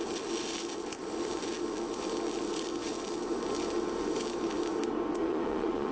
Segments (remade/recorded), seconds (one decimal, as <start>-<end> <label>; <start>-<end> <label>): 0.0-5.2 recorded; 5.2-5.9 remade